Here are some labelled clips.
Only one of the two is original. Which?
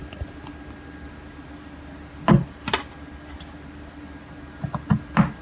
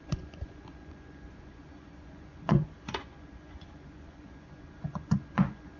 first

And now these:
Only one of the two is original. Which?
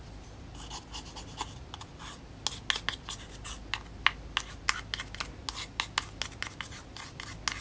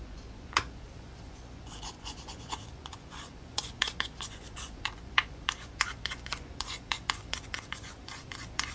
first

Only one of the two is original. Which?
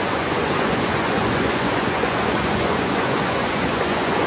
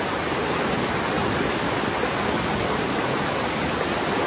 second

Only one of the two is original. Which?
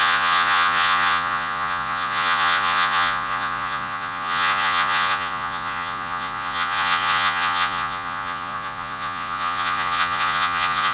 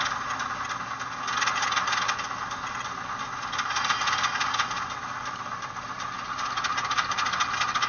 second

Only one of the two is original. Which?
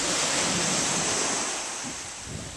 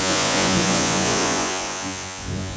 first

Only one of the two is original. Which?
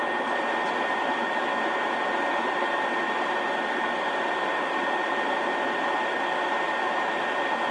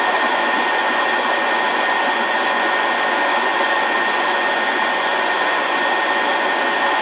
first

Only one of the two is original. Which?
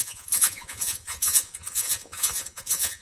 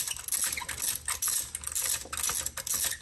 second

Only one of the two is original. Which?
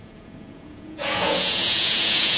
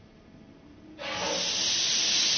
second